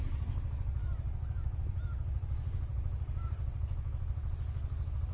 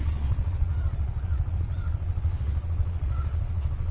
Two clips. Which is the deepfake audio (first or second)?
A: second